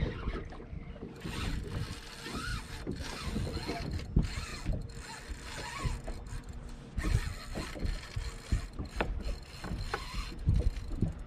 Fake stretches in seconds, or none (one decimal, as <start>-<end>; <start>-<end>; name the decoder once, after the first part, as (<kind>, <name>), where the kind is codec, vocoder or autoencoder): 2.5-3.3 (vocoder, BigVGAN v2)